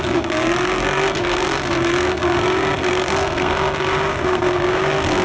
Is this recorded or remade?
remade